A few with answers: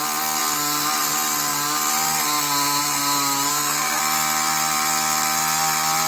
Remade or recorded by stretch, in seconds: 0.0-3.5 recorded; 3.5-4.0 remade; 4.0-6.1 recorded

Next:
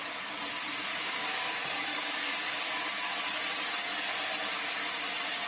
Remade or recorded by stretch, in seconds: 0.0-0.9 recorded; 0.9-1.5 remade; 1.5-1.9 recorded; 1.9-2.7 remade; 2.7-5.5 recorded

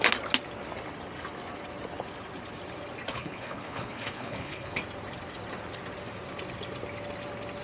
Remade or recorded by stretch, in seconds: 0.0-3.1 recorded; 3.1-4.8 remade; 4.8-7.6 recorded